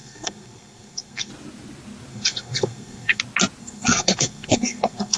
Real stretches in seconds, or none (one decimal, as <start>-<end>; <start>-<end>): 1.3-2.1; 3.2-3.6